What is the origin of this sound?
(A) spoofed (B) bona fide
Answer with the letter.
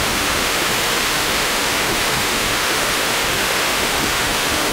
A